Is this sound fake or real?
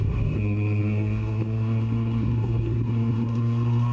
fake